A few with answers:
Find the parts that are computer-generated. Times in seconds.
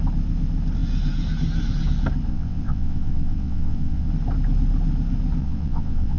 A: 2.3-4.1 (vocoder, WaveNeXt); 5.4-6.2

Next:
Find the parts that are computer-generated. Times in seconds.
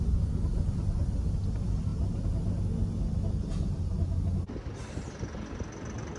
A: none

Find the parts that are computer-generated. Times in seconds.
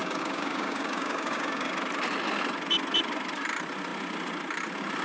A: 0.0-1.7 (codec, DAC)